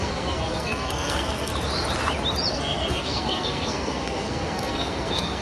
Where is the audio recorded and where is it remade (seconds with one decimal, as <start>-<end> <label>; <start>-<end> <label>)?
0.0-1.5 remade; 1.5-2.5 recorded; 2.5-5.4 remade